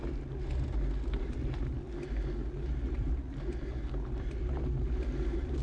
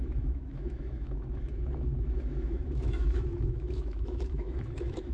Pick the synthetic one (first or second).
second